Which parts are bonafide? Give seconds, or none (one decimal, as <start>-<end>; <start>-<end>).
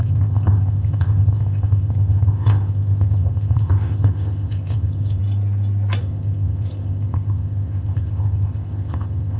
5.2-6.0